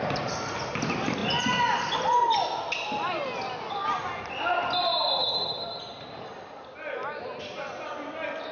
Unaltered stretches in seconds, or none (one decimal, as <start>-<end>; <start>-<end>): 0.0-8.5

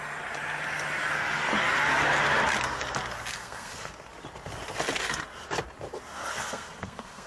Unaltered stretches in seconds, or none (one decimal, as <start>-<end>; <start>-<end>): 0.0-3.3; 3.9-6.3

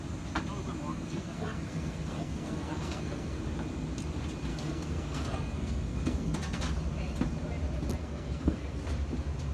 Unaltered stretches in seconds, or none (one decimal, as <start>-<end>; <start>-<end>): 0.0-0.9; 3.4-4.5; 6.6-8.0; 8.8-9.5

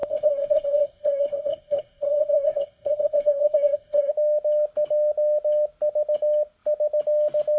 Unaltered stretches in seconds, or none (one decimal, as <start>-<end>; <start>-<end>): 4.1-7.6